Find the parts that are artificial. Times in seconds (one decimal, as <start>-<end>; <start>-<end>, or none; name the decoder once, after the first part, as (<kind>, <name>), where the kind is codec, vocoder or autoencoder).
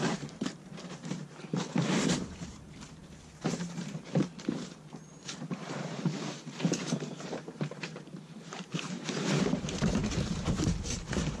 0.0-11.4 (vocoder, BigVGAN v2)